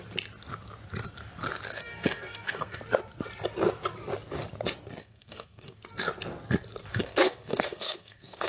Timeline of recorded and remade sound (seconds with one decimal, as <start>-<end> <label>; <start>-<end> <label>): 0.0-1.7 recorded; 1.7-2.8 remade; 2.8-5.0 recorded; 5.0-5.8 remade; 5.8-6.9 recorded; 6.9-8.5 remade